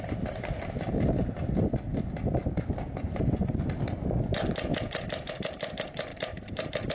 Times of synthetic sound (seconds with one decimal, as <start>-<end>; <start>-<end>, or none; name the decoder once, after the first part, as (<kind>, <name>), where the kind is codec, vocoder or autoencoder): 4.7-5.3 (vocoder, BigVGAN v2); 6.1-6.9